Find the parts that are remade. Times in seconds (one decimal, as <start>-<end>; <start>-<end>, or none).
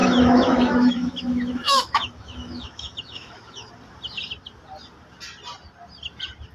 0.0-3.7